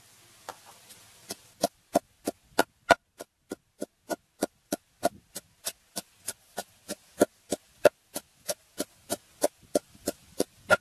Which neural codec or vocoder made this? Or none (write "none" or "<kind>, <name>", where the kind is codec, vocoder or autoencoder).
none